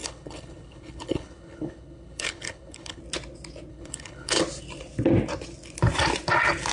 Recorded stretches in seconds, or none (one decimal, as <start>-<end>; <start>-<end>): 3.0-3.7; 4.4-6.7